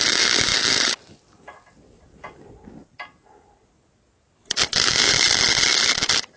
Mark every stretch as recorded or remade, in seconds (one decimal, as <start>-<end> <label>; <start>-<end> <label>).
0.0-4.6 recorded; 4.6-5.1 remade; 5.1-6.4 recorded